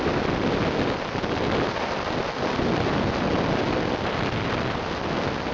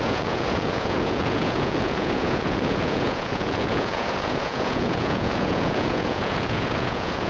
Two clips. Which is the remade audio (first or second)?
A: second